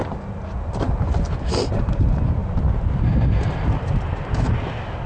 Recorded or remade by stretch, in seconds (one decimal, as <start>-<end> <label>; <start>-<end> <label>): 0.0-5.1 recorded